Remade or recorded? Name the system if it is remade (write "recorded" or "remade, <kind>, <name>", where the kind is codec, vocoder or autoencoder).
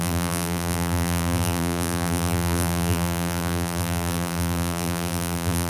remade, vocoder, BigVGAN v2